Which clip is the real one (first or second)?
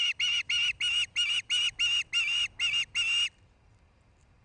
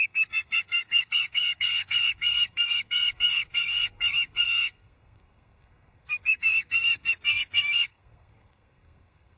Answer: first